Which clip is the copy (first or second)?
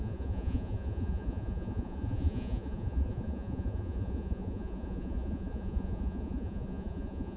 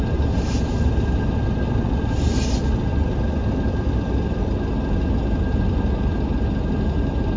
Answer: first